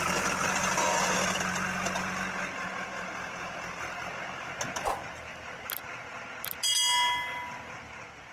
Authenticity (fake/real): real